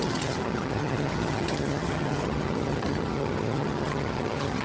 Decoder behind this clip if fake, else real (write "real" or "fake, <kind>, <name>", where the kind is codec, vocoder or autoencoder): fake, vocoder, HiFi-GAN